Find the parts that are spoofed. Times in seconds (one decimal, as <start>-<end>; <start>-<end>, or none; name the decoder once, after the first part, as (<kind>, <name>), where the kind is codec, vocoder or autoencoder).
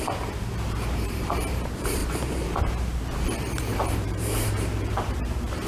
0.0-5.7 (vocoder, BigVGAN v2)